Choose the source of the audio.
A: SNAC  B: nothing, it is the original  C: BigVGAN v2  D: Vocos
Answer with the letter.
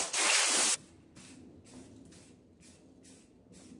B